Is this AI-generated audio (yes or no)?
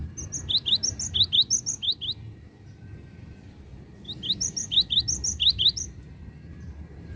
no